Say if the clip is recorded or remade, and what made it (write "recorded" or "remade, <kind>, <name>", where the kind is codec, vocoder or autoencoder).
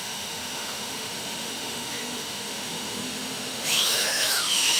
remade, autoencoder, DAC-VAE